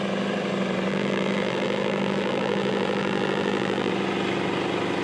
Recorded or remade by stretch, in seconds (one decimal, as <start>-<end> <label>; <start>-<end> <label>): 0.0-0.9 recorded; 0.9-3.9 remade; 3.9-5.0 recorded